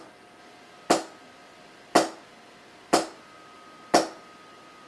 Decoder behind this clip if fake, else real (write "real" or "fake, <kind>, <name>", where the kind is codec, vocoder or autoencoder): real